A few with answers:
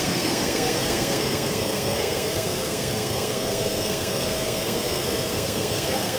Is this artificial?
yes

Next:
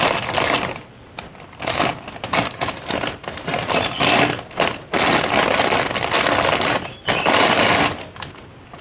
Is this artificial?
no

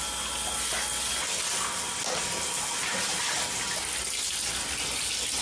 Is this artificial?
no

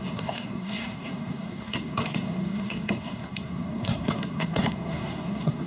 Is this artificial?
yes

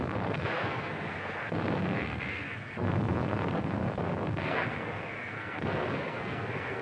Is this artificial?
yes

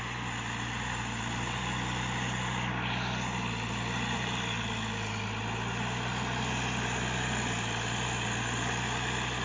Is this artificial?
no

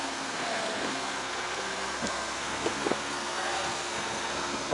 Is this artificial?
yes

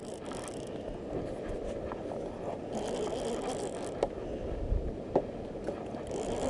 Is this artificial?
no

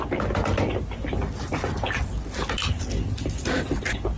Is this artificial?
no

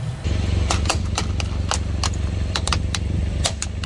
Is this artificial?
no